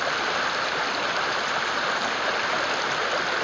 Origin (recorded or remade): recorded